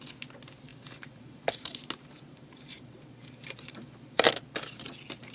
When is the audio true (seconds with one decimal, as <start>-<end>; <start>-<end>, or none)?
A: 0.0-0.7; 1.8-2.3; 4.3-5.3